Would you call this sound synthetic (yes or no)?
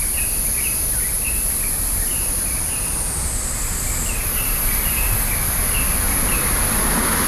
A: no